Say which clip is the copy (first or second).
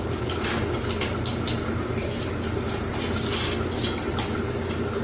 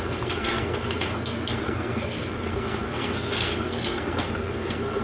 second